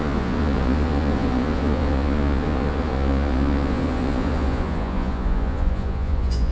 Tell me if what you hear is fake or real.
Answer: fake